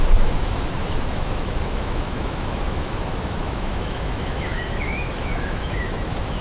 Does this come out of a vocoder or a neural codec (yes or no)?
yes